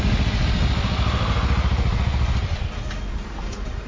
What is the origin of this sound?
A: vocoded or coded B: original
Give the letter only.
B